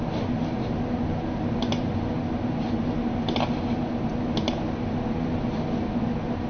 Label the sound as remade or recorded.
recorded